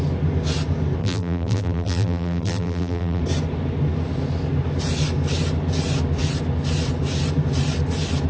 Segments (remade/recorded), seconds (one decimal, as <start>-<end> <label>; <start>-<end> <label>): 0.0-1.0 recorded; 1.0-3.2 remade; 3.2-8.3 recorded